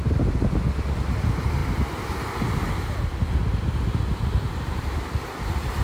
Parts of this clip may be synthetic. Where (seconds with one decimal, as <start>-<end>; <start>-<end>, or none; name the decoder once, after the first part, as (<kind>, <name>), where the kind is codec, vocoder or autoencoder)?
none